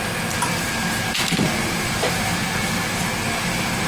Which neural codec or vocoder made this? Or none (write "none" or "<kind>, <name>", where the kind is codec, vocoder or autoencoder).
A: none